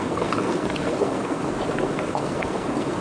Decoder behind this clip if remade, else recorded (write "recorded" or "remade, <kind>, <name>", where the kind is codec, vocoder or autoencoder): remade, codec, SNAC